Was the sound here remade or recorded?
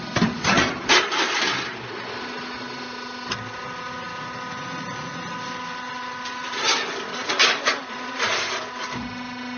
recorded